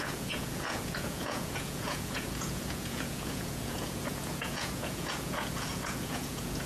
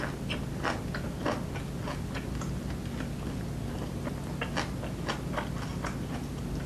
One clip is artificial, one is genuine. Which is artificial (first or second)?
first